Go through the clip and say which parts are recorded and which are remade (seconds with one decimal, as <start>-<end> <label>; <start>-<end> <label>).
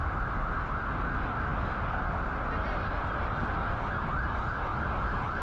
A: 0.0-5.4 recorded